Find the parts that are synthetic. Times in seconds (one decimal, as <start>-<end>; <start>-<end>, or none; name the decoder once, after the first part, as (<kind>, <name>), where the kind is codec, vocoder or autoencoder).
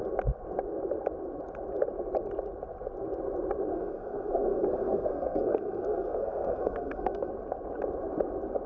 3.7-7.3 (codec, SNAC)